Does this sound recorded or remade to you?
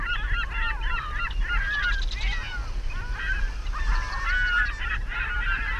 recorded